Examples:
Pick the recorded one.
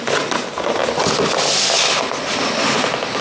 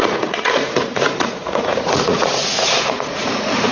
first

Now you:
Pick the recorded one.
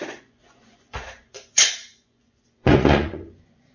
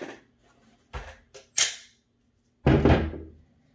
second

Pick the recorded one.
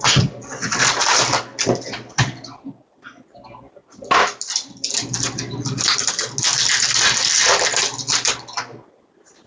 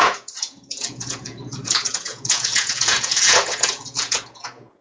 first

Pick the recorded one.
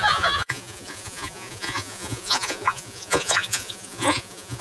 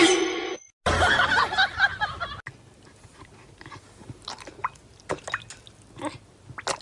second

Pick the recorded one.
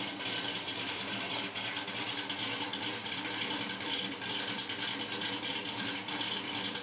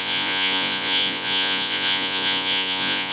first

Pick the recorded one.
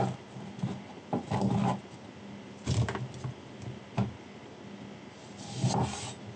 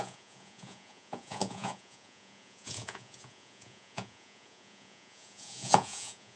first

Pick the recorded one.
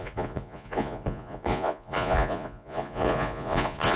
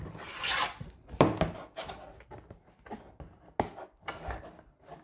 second